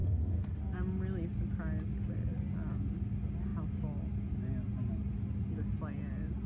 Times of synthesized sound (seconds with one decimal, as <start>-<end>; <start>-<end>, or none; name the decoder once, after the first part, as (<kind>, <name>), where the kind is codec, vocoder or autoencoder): 0.0-0.6 (codec, SNAC)

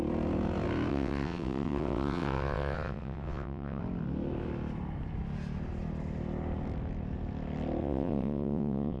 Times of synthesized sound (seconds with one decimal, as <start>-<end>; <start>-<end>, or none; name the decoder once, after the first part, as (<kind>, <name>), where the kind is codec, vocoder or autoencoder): 0.9-3.8 (vocoder, WaveNeXt); 7.8-9.0

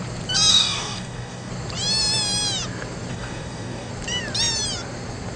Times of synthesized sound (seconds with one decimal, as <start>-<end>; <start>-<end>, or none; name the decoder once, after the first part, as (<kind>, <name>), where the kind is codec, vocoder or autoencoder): 0.5-1.5 (codec, DAC); 3.1-3.9

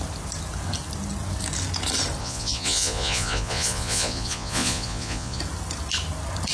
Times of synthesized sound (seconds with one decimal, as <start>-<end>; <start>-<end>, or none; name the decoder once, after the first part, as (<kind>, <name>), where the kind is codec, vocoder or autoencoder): 2.2-5.4 (vocoder, Vocos)

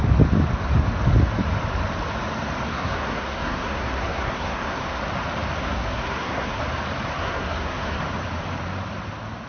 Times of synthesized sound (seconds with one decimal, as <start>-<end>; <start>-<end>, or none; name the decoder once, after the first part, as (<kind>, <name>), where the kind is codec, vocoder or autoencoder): 2.7-5.0 (codec, SNAC); 5.6-6.6; 7.2-8.0